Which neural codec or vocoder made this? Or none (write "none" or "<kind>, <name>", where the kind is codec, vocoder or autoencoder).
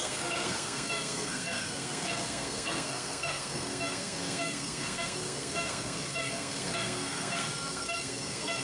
codec, SNAC